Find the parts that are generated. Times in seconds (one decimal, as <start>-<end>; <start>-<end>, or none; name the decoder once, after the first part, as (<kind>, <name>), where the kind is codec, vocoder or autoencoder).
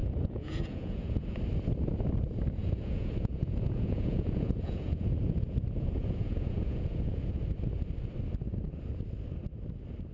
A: 0.0-1.4 (vocoder, Vocos); 2.6-7.3